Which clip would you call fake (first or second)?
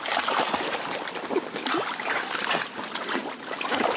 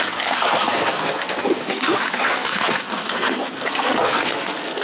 second